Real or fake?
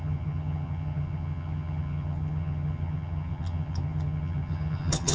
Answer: fake